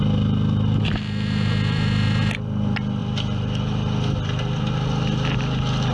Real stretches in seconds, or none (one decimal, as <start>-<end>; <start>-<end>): 0.0-3.0; 4.6-5.9